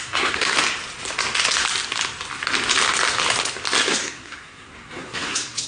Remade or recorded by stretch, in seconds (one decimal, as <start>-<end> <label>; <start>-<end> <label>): 0.0-0.5 remade; 0.5-3.9 recorded; 3.9-5.7 remade